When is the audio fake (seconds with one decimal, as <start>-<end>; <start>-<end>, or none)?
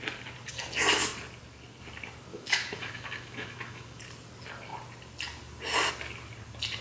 2.3-4.0